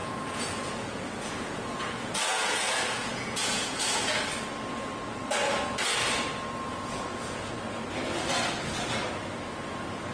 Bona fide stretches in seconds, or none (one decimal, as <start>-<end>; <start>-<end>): 4.2-6.7; 7.5-10.1